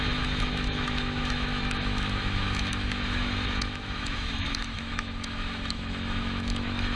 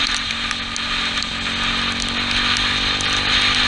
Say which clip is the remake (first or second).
first